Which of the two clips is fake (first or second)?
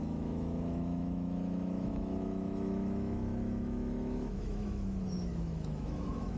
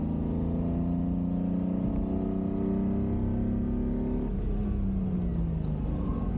first